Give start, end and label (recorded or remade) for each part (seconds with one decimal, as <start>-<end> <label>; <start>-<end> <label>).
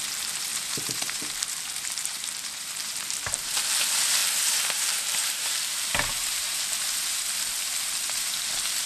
0.0-0.5 recorded; 0.5-3.8 remade; 3.8-4.2 recorded; 4.2-6.7 remade; 6.7-8.9 recorded